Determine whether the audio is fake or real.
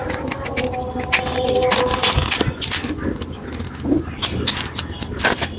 real